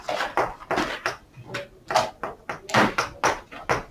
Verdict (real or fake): real